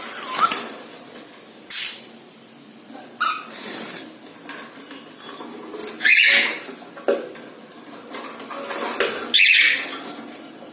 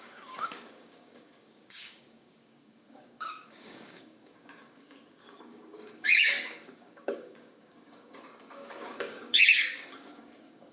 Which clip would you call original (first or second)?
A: first